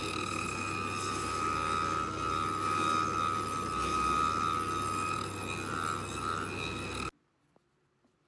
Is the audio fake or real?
real